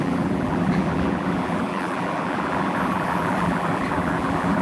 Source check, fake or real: fake